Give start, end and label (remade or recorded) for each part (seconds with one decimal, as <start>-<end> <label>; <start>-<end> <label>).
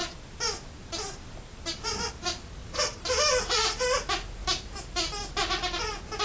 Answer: 0.0-6.2 recorded